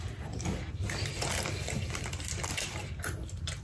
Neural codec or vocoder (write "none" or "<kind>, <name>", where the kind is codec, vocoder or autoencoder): none